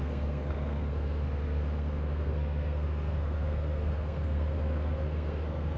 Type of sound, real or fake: fake